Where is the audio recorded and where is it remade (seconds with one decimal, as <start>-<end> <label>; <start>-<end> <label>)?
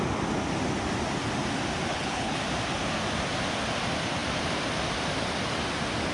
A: 0.0-1.9 recorded; 1.9-2.4 remade; 2.4-6.1 recorded